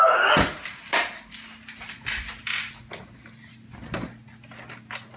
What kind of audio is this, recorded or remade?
recorded